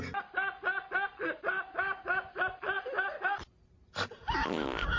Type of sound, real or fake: real